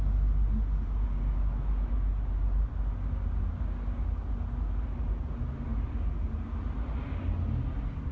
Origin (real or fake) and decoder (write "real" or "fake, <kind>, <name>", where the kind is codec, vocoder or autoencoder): real